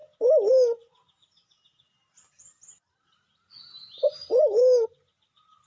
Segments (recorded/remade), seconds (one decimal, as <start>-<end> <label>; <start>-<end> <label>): 0.0-0.5 recorded; 0.5-5.7 remade

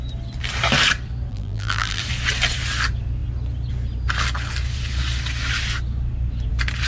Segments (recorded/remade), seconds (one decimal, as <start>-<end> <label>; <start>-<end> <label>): 0.0-1.3 recorded; 1.3-2.0 remade; 2.0-6.9 recorded

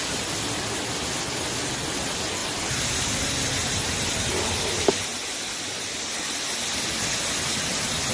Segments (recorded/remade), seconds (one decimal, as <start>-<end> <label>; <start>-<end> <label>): 0.0-2.4 recorded; 2.4-3.0 remade; 3.0-3.6 recorded; 3.6-4.1 remade; 4.1-5.1 recorded; 5.1-6.5 remade; 6.5-8.1 recorded